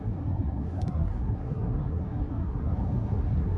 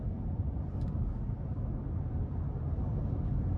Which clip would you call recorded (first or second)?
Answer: second